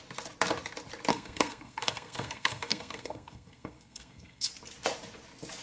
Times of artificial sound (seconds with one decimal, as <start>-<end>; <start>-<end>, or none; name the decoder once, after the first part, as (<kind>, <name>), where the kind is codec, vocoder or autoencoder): 1.1-4.5 (codec, SNAC)